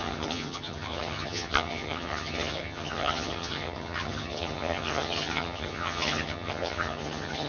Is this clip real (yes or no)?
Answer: no